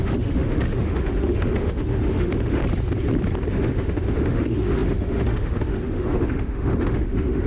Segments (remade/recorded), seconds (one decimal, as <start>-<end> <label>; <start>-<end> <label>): 0.0-2.6 remade; 2.6-3.5 recorded; 3.5-7.5 remade

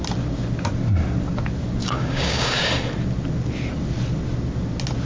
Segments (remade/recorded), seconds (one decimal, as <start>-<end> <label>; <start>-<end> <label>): 0.0-1.8 recorded; 1.8-2.7 remade; 2.7-5.1 recorded

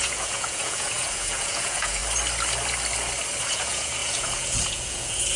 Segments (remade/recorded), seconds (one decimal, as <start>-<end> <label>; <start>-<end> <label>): 0.0-2.0 remade; 2.0-3.4 recorded; 3.4-5.4 remade

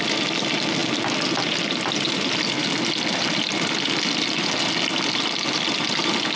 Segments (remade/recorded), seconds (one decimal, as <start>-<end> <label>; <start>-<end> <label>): 0.0-6.4 recorded